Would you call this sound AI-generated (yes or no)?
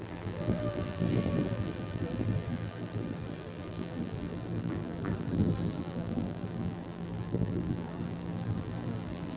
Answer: yes